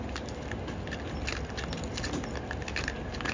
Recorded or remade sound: recorded